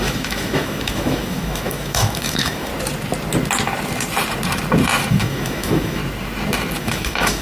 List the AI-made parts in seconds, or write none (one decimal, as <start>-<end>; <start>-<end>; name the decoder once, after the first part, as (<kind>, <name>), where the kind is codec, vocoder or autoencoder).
0.0-2.7 (autoencoder, DAC-VAE); 5.1-6.0; 6.8-7.4